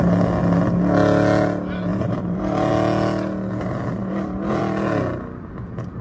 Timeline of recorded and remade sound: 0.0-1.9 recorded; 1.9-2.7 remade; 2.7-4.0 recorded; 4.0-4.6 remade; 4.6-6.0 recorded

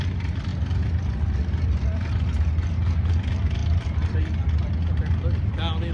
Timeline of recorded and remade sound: 0.0-3.6 recorded; 3.6-4.2 remade; 4.2-5.9 recorded

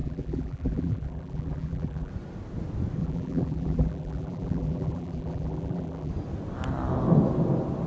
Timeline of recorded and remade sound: 0.0-2.1 remade; 2.1-3.0 recorded; 3.0-6.1 remade; 6.1-7.9 recorded

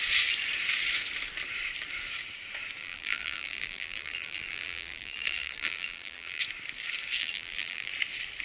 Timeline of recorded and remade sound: 0.0-2.8 recorded; 2.8-6.4 remade; 6.4-7.2 recorded; 7.2-7.9 remade; 7.9-8.4 recorded

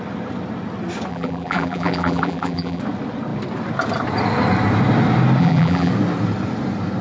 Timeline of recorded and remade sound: 0.0-1.1 recorded; 1.1-2.8 remade; 2.8-5.4 recorded; 5.4-5.9 remade; 5.9-7.0 recorded

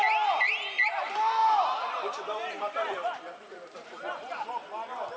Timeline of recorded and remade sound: 0.0-1.4 recorded; 1.4-4.5 remade; 4.5-5.2 recorded

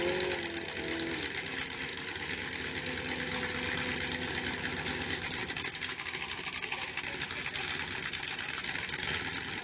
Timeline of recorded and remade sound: 0.0-5.4 recorded; 5.4-6.1 remade; 6.1-9.6 recorded